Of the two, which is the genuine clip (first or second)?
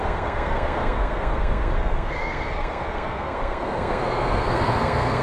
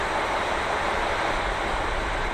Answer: second